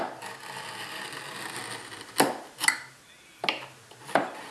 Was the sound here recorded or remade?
recorded